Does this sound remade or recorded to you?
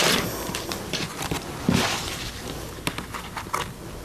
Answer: recorded